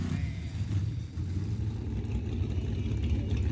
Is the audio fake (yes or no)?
no